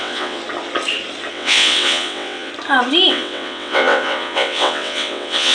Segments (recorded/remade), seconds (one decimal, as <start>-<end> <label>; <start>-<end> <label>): 0.0-0.4 remade; 0.4-1.3 recorded; 1.3-2.5 remade; 2.5-3.1 recorded; 3.1-5.5 remade